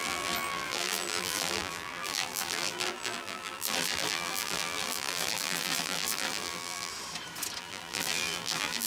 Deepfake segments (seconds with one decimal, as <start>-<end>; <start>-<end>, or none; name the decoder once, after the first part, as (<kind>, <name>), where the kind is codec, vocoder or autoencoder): 0.0-6.9 (vocoder, BigVGAN v2); 7.6-8.9